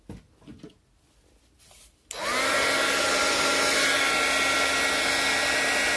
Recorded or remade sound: recorded